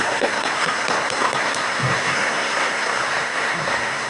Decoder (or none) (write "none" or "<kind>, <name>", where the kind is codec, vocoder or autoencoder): codec, SNAC